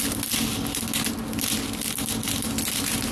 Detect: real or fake real